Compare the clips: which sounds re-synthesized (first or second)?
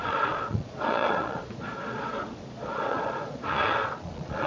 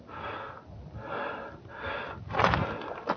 first